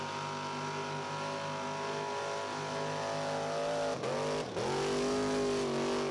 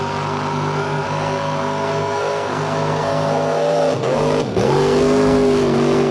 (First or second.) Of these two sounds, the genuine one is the first